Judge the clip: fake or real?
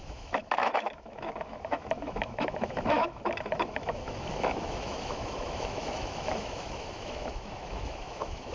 fake